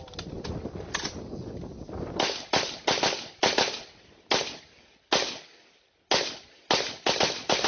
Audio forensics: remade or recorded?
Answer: recorded